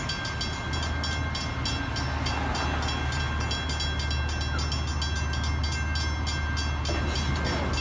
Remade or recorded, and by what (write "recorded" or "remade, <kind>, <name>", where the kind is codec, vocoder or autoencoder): recorded